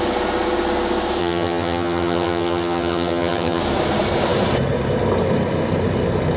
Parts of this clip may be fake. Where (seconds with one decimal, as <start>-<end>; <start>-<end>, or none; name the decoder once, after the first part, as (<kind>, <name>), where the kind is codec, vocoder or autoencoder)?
1.2-3.6 (vocoder, HiFi-GAN)